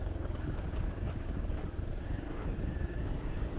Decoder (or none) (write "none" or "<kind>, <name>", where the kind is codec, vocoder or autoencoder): codec, DAC